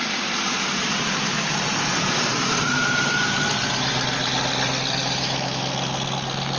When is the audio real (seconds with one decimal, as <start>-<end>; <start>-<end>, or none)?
0.0-5.0; 5.6-6.6